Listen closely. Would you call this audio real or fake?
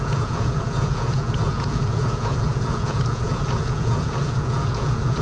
fake